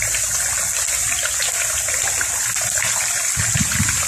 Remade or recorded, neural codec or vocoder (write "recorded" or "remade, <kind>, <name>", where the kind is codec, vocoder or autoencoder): recorded